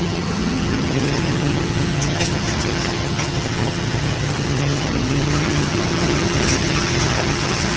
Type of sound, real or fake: fake